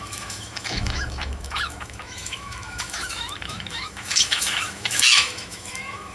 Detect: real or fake fake